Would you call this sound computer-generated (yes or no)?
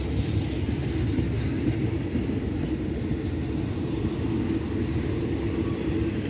no